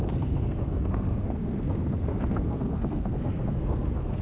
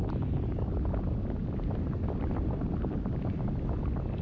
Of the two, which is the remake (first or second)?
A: first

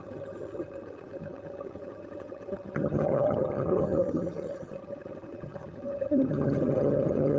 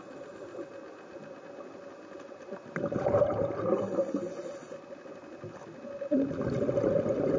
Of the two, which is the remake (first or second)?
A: first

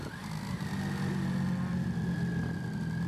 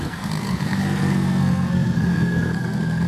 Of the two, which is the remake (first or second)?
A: second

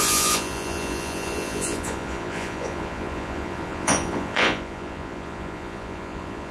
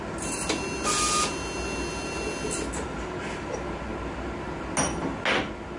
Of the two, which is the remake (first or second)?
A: first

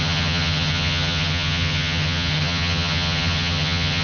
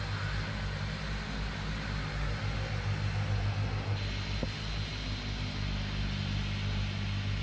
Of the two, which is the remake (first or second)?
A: first